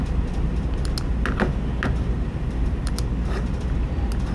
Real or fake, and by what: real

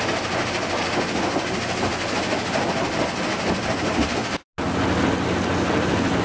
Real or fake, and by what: real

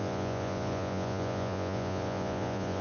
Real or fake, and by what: fake, vocoder, Vocos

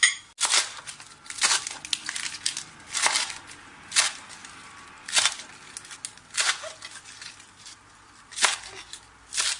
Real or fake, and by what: real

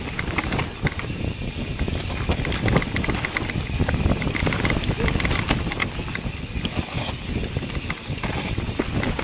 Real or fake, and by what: real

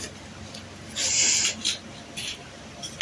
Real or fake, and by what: real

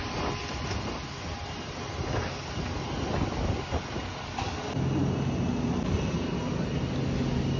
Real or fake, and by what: real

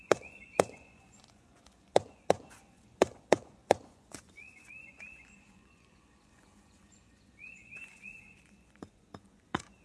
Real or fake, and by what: fake, vocoder, Vocos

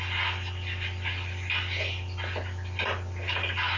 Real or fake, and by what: real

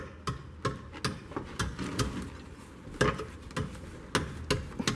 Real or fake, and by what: real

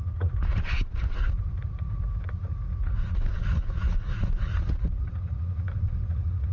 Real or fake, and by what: fake, vocoder, Vocos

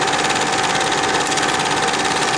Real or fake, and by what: real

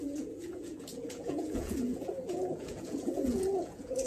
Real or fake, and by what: fake, vocoder, Vocos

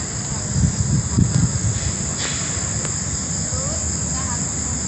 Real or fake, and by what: real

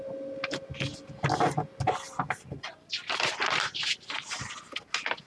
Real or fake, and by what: real